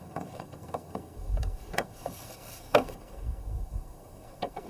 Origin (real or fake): fake